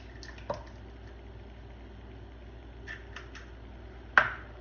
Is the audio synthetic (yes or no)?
no